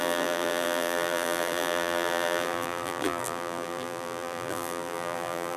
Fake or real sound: fake